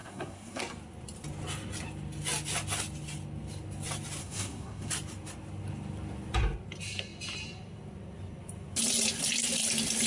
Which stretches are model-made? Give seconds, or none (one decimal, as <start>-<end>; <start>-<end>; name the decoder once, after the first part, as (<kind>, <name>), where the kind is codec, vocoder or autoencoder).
0.0-0.6 (codec, SNAC); 4.2-4.9